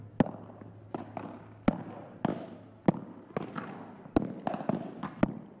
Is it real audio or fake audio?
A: real